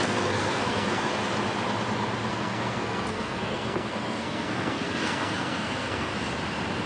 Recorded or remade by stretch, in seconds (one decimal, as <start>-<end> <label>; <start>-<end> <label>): 0.0-1.1 remade; 1.1-2.3 recorded; 2.3-6.1 remade; 6.1-6.9 recorded